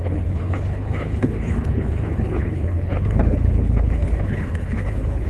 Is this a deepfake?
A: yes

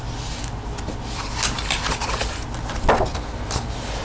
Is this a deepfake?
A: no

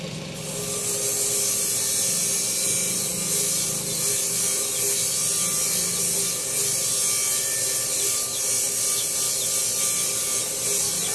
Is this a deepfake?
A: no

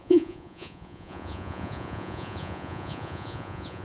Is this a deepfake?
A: yes